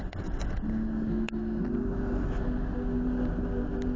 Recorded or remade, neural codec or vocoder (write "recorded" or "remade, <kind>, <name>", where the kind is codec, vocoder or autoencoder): recorded